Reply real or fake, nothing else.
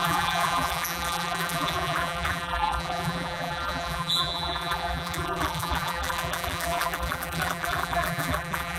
fake